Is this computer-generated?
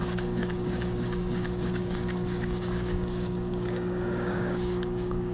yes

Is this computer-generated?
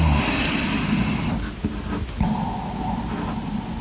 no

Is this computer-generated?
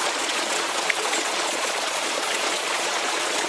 yes